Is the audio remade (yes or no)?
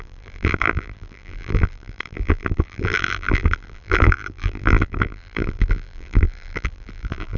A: yes